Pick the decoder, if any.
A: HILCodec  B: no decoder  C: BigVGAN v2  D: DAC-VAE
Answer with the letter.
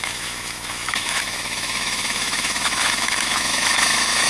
D